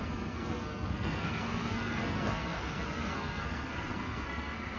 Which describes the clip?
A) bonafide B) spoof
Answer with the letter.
B